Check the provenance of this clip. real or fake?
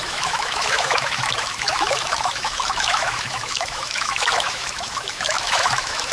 fake